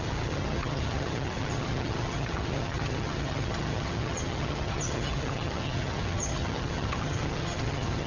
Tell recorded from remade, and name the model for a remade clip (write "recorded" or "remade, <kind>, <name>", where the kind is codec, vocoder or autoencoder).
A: remade, vocoder, HiFi-GAN